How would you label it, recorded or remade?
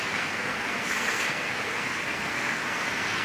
remade